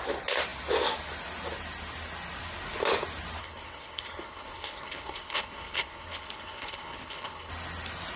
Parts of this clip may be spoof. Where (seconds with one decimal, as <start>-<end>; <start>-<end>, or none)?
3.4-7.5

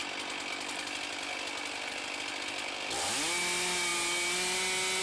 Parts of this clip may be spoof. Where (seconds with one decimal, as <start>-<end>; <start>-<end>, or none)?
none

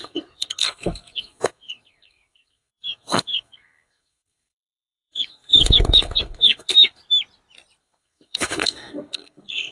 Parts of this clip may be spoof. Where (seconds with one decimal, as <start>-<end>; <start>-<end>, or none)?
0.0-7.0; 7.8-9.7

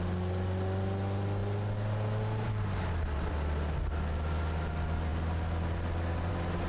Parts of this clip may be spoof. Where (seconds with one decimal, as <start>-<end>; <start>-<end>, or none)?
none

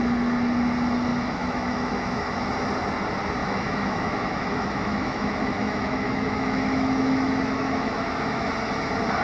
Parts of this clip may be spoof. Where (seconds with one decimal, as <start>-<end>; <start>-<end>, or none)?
1.1-2.5; 3.4-8.5

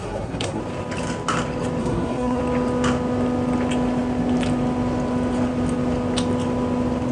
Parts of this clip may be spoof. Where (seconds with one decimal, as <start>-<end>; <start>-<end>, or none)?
0.0-0.6; 1.8-2.4

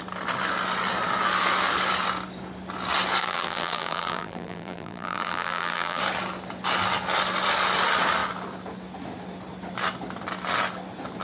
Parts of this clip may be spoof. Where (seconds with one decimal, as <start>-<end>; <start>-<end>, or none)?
3.2-6.0

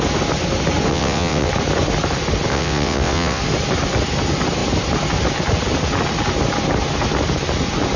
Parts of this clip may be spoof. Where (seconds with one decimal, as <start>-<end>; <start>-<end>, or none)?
0.9-1.5; 2.5-3.4